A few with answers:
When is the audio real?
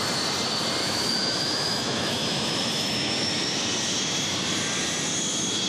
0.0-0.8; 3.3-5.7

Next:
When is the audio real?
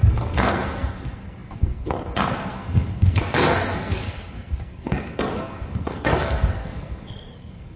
none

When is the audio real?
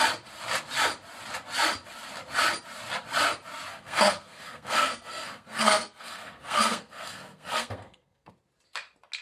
0.0-3.7; 8.3-9.2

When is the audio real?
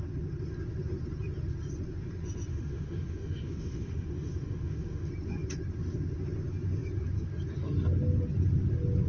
0.0-2.5; 5.1-9.1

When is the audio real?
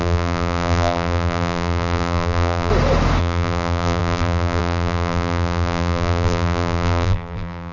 2.7-3.2